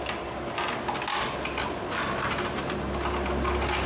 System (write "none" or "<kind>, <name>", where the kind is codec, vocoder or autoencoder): none